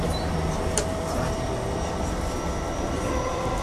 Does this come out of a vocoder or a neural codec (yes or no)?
no